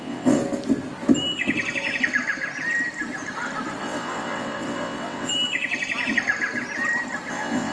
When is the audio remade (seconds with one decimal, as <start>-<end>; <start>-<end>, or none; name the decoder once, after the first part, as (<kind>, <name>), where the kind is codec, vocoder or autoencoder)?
0.0-0.4 (vocoder, WaveNeXt); 3.8-5.3; 7.3-7.7